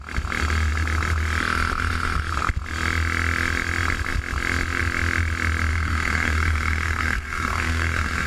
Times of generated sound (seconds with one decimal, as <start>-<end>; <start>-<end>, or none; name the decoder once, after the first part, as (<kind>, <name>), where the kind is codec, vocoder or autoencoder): 5.7-8.3 (codec, SNAC)